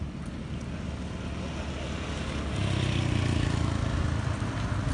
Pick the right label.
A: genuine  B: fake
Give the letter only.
A